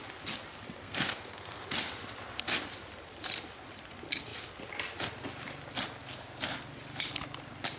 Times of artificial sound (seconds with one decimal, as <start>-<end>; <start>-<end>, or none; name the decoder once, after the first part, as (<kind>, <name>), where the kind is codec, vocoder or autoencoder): 0.8-1.6 (codec, SNAC)

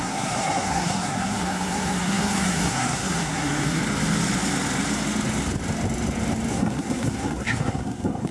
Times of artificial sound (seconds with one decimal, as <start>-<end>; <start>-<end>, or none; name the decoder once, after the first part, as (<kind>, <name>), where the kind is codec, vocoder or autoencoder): 0.0-3.8 (codec, SNAC); 6.5-8.3

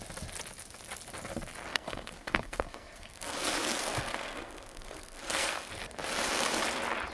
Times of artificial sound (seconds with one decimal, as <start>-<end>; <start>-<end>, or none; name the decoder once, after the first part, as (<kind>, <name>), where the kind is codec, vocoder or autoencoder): 1.7-5.7 (codec, SNAC)

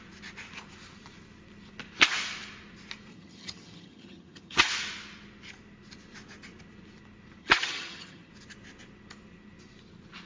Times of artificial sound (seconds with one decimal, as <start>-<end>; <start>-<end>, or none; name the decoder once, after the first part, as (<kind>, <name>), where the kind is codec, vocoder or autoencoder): 3.1-4.7 (vocoder, HiFi-GAN); 7.4-8.3

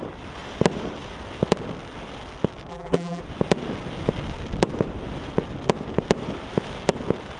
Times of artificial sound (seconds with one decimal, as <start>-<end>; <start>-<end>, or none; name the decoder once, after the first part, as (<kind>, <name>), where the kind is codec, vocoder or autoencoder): 2.7-3.2 (vocoder, BigVGAN v2)

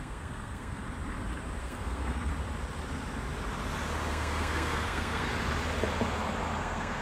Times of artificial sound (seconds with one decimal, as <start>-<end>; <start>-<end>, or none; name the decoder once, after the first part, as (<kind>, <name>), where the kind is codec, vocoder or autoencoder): 0.0-0.8 (codec, SNAC); 1.6-2.3; 4.1-5.3; 6.6-7.0